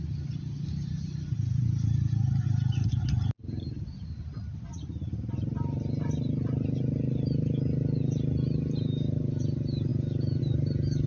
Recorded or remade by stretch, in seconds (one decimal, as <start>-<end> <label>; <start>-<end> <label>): 0.0-11.1 recorded